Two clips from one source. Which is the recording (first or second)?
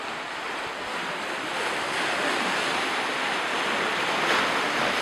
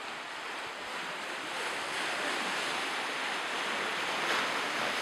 first